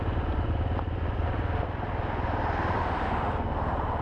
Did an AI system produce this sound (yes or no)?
no